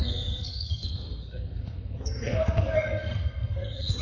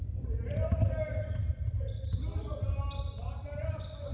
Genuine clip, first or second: second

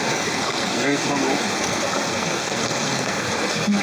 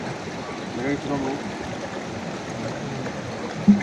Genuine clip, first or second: second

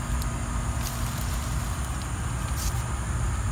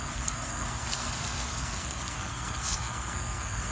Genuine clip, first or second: first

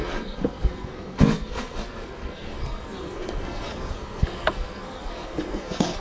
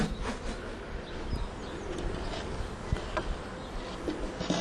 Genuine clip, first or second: second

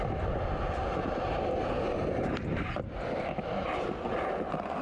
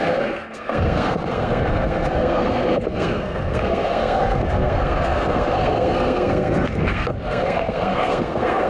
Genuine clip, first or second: first